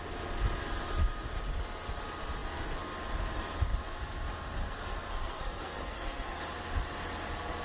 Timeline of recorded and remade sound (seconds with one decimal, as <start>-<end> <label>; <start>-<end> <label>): 0.0-4.6 recorded; 4.6-6.4 remade; 6.4-7.6 recorded